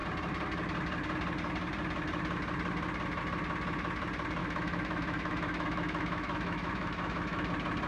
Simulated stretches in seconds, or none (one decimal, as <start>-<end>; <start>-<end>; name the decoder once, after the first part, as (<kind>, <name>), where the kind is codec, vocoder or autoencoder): 4.4-7.5 (autoencoder, DAC-VAE)